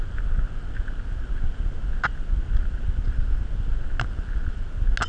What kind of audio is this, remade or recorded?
recorded